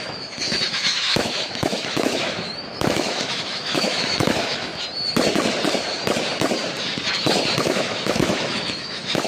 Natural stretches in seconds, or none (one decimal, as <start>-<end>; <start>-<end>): 4.7-7.6